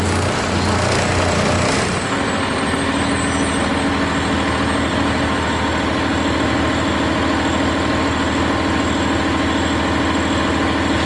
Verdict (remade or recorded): recorded